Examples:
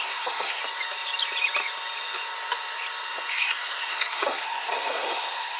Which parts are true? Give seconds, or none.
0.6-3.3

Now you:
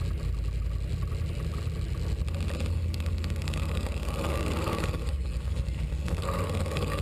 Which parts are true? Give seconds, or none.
0.0-2.7

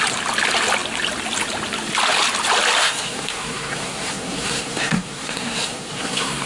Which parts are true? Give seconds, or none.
0.0-2.8

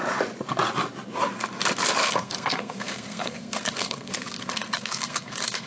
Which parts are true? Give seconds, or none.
0.0-2.0

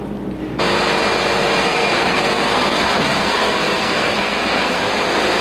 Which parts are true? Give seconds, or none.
0.0-1.6; 4.8-5.4

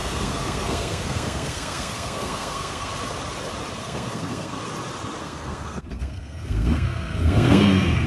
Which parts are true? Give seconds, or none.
2.9-3.8; 4.6-5.2

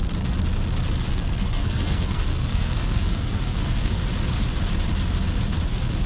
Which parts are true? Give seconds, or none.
0.0-1.1; 4.0-6.1